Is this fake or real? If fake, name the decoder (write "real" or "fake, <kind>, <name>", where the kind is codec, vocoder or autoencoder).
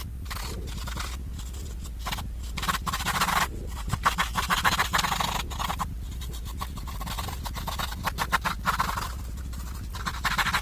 real